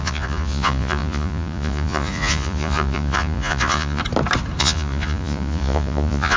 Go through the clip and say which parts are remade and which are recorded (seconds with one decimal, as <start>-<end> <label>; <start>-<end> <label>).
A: 0.0-4.0 remade; 4.0-4.6 recorded; 4.6-6.4 remade